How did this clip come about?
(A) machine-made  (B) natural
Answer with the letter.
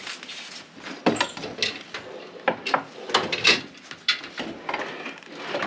B